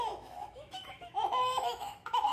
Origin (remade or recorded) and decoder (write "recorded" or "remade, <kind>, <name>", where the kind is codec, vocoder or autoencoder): remade, autoencoder, DAC-VAE